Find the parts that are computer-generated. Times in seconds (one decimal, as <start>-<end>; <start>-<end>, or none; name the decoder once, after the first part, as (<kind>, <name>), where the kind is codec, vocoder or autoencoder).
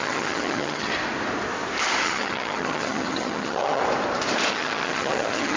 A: 0.0-0.9 (vocoder, HiFi-GAN); 2.0-3.8; 4.5-5.6